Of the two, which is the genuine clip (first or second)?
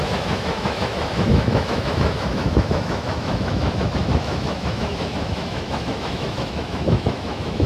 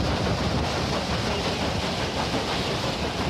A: second